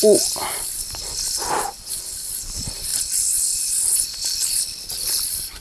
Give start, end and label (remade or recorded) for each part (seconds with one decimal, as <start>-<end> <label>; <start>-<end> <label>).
0.0-0.4 recorded; 0.4-1.0 remade; 1.0-5.6 recorded